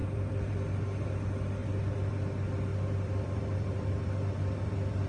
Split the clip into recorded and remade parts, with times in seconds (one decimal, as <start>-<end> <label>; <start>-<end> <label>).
0.0-0.5 remade; 0.5-1.6 recorded; 1.6-2.1 remade; 2.1-2.7 recorded; 2.7-5.1 remade